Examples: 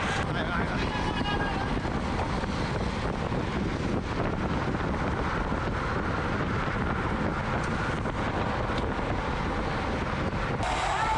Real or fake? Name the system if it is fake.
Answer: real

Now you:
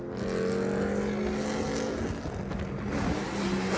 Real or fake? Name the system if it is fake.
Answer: real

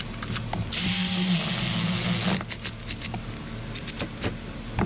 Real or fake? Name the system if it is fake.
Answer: real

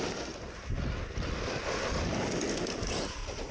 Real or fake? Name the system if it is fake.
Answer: real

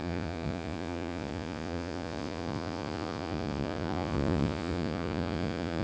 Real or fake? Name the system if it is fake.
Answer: fake, vocoder, Vocos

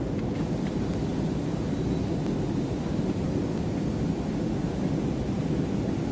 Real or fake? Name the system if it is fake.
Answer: real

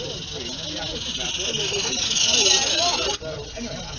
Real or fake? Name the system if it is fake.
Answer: real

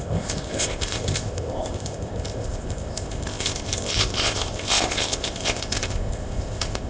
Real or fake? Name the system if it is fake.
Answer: fake, codec, ZipCodec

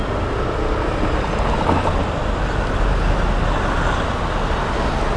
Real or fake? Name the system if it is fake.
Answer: real